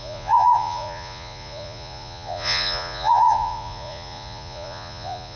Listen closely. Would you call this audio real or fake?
fake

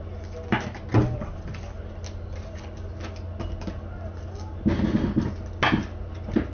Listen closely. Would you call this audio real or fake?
real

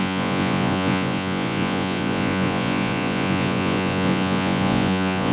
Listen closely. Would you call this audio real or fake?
fake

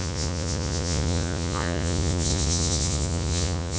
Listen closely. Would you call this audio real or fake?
fake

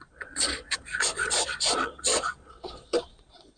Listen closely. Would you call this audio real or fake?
fake